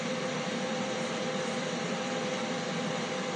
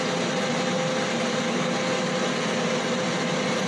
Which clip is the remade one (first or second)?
first